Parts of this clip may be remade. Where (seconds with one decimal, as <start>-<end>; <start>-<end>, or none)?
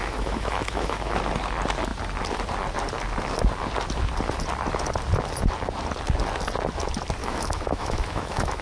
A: 0.0-1.2; 7.2-8.6